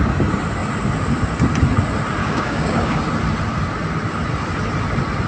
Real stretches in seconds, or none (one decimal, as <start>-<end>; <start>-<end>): 0.0-2.2; 3.0-5.3